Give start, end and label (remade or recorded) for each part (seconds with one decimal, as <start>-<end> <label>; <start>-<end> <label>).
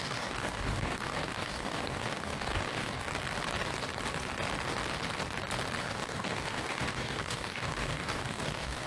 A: 0.0-3.1 remade; 3.1-5.8 recorded; 5.8-8.9 remade